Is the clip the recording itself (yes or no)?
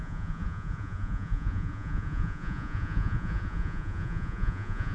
no